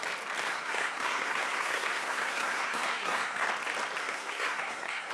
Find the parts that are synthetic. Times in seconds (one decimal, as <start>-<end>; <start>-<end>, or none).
0.4-3.5; 4.0-5.1